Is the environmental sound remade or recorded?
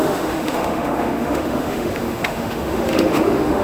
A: remade